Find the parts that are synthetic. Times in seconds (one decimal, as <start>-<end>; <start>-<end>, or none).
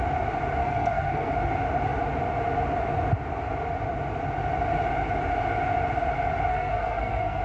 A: 0.6-1.3; 6.5-7.4